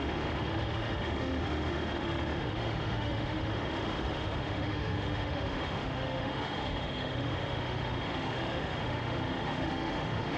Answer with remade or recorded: remade